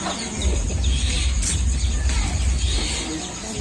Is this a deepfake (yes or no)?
no